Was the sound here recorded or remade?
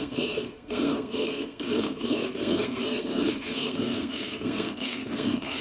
remade